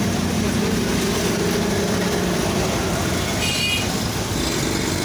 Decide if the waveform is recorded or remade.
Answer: recorded